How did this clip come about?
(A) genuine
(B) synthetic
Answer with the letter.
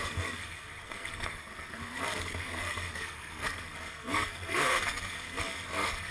B